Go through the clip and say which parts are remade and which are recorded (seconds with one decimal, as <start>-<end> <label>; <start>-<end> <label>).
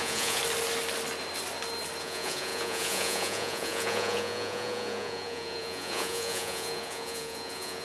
0.0-0.4 remade; 0.4-2.0 recorded; 2.0-7.8 remade